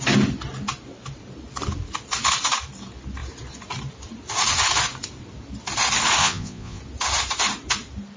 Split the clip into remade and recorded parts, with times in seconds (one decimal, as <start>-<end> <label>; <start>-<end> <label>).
0.0-6.2 recorded; 6.2-6.8 remade; 6.8-8.2 recorded

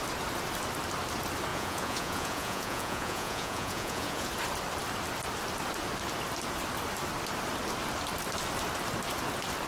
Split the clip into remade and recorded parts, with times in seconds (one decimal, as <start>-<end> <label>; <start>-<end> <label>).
0.0-1.5 recorded; 1.5-4.3 remade; 4.3-9.7 recorded

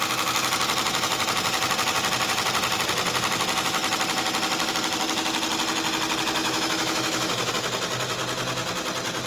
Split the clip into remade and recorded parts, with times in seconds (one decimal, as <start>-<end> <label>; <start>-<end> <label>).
0.0-6.4 recorded; 6.4-7.5 remade; 7.5-9.3 recorded